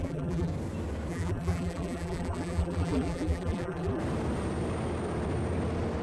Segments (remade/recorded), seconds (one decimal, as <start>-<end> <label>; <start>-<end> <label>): 0.0-0.5 remade; 0.5-1.1 recorded; 1.1-4.0 remade; 4.0-6.0 recorded